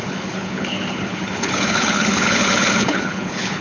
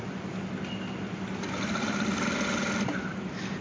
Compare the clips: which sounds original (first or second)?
second